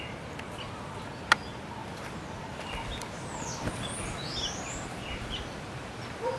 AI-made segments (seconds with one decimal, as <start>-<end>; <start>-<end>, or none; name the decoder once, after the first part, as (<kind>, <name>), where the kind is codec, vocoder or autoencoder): none